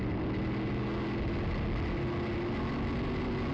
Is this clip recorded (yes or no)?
yes